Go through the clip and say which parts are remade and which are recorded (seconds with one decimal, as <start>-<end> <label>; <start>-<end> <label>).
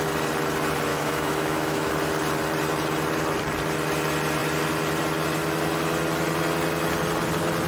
0.0-0.9 recorded; 0.9-1.9 remade; 1.9-7.7 recorded